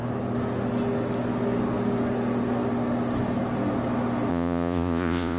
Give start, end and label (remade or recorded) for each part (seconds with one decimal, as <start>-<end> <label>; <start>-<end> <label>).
0.0-4.3 recorded; 4.3-5.4 remade